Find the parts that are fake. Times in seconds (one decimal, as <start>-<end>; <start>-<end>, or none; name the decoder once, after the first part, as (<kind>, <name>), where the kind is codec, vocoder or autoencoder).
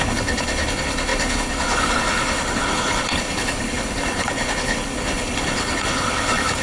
0.0-6.6 (codec, HILCodec)